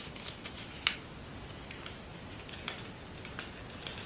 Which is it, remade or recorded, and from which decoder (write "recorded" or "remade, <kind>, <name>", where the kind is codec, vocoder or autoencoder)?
recorded